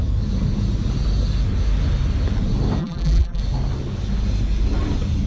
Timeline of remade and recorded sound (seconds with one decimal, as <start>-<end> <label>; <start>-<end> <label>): 0.0-2.8 recorded; 2.8-3.4 remade; 3.4-5.3 recorded